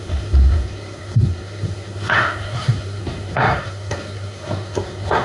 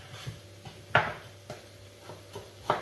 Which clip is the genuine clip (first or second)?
second